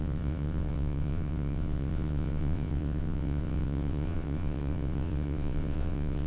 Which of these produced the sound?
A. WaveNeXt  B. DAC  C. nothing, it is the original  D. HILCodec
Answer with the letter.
A